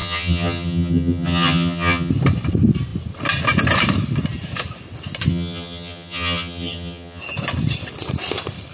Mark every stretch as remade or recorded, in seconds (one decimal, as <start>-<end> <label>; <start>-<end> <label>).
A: 0.0-2.1 remade; 2.1-5.3 recorded; 5.3-7.2 remade; 7.2-8.7 recorded